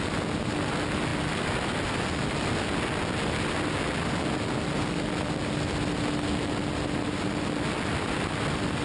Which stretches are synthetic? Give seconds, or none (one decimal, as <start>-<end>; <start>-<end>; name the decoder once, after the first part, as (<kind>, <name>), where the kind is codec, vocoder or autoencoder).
none